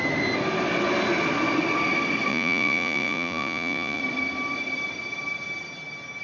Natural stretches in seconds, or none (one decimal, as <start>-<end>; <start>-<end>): 0.0-2.3; 4.0-6.2